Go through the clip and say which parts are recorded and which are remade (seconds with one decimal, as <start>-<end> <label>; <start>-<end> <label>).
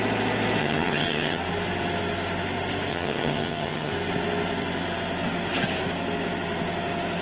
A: 0.0-0.6 recorded; 0.6-1.4 remade; 1.4-2.9 recorded; 2.9-3.9 remade; 3.9-7.2 recorded